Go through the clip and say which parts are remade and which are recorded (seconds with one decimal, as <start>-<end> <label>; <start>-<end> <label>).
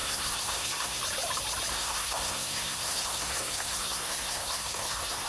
0.0-1.0 remade; 1.0-1.7 recorded; 1.7-5.3 remade